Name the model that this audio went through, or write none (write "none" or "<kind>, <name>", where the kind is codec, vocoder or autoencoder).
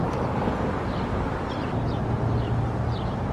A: none